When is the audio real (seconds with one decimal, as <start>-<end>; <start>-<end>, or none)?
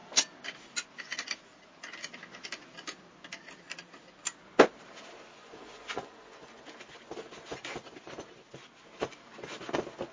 0.0-5.3; 6.6-10.1